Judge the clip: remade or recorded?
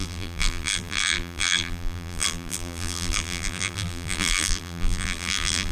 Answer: remade